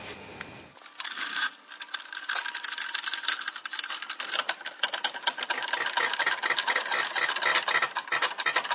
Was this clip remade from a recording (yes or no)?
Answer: no